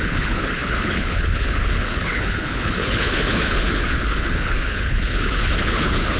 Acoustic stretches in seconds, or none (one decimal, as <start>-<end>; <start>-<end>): none